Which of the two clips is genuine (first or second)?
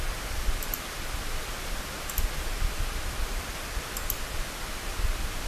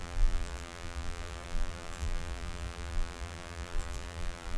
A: first